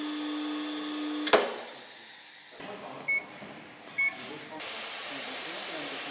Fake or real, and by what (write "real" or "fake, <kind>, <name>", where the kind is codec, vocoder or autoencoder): real